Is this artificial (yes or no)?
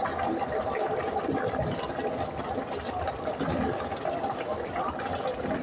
no